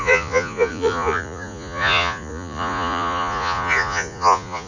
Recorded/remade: remade